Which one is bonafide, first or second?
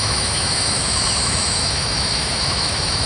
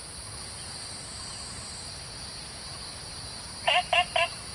second